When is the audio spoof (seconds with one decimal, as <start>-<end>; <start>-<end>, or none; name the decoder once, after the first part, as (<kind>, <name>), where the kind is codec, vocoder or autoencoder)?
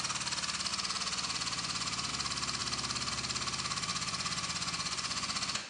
0.7-2.1 (vocoder, Vocos); 3.9-5.7